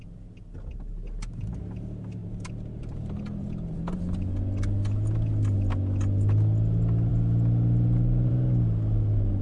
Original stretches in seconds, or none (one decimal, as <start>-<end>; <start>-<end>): 0.0-2.2; 4.0-9.4